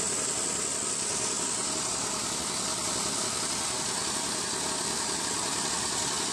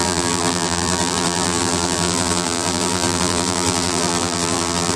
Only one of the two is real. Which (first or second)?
first